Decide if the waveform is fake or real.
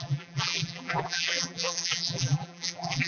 fake